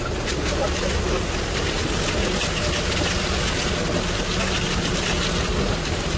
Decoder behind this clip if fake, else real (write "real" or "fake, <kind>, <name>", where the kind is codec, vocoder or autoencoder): real